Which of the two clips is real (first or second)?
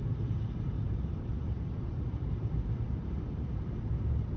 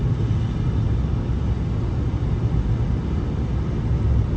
second